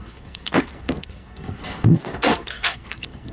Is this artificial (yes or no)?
yes